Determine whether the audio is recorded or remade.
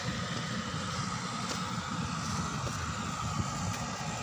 recorded